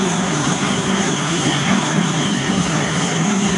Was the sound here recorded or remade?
remade